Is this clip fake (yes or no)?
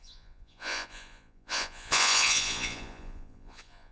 yes